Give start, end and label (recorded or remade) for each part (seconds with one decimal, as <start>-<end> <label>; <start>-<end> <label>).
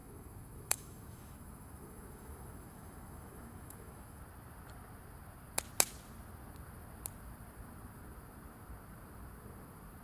0.0-4.2 remade; 4.2-10.0 recorded